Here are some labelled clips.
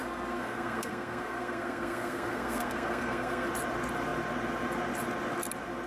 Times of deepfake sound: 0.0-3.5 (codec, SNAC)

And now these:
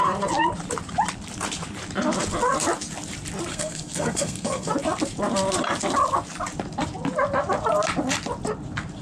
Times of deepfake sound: 3.5-4.7 (codec, SNAC)

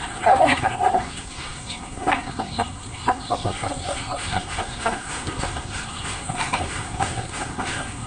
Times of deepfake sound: 0.0-8.1 (codec, SNAC)

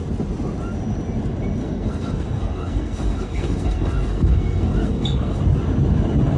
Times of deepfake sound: 1.6-5.4 (codec, SNAC)

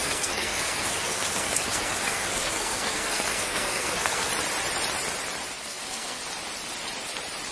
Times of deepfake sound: 0.0-4.3 (codec, SNAC); 5.6-6.2

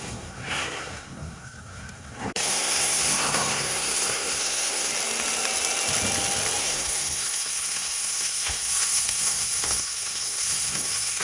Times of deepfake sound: 0.0-4.9 (codec, SNAC); 6.6-11.2

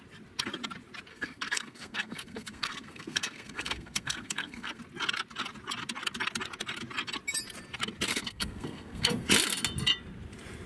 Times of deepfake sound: 1.1-4.8 (codec, SNAC); 8.1-9.3